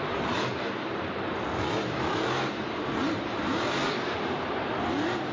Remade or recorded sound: remade